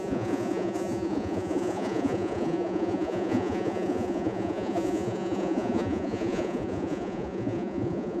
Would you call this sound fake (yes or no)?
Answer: yes